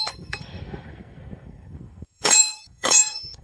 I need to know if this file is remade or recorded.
remade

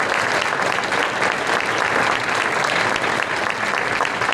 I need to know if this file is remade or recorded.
recorded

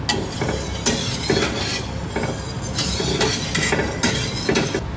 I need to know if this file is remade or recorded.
recorded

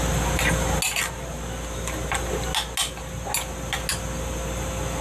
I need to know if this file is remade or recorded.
recorded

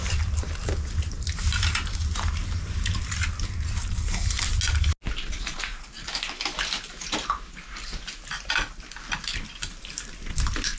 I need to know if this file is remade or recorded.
recorded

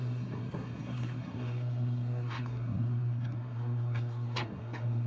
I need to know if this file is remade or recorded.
remade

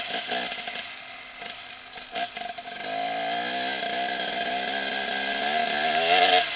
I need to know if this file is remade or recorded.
recorded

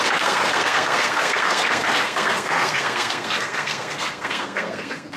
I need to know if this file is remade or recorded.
remade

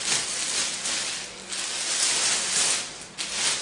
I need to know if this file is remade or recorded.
recorded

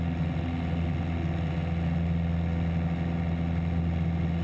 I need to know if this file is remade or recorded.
recorded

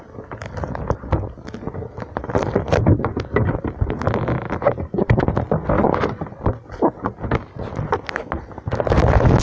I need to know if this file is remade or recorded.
recorded